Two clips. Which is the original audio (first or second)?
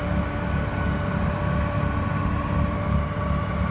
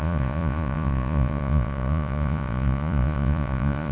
first